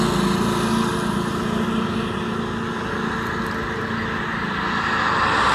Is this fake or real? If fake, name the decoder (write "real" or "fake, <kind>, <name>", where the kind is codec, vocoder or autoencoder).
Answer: real